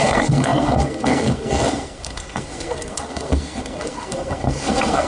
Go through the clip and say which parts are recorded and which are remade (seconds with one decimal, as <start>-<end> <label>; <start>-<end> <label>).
0.0-5.1 remade